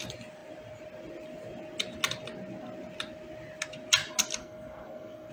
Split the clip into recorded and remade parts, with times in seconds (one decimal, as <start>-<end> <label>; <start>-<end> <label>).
0.0-4.4 recorded; 4.4-5.3 remade